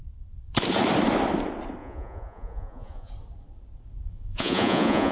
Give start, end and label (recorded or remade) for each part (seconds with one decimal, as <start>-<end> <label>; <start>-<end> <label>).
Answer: 0.0-1.8 recorded; 1.8-3.1 remade; 3.1-4.1 recorded; 4.1-5.1 remade